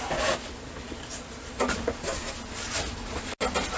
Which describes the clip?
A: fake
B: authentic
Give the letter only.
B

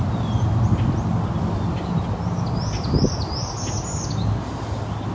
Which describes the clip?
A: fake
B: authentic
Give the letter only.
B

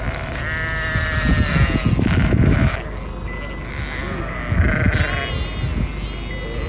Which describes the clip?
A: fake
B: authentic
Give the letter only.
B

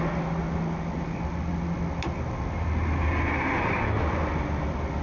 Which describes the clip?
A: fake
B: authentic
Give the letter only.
B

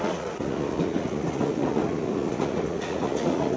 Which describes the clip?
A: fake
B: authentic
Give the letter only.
A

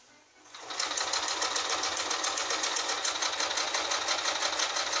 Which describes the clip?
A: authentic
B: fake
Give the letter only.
B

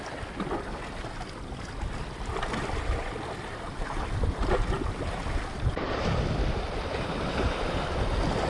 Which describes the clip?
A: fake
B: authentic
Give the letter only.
B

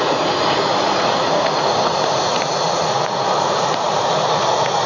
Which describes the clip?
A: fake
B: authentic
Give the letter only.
A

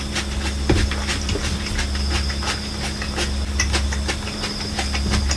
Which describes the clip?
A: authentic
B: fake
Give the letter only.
A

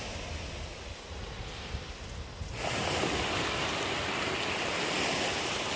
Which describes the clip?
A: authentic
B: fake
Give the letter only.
A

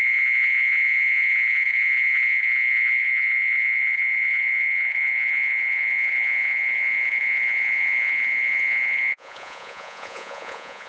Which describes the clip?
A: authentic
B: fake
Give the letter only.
B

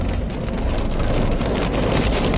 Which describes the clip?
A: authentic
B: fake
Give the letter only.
A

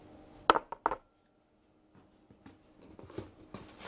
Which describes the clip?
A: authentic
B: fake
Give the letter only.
A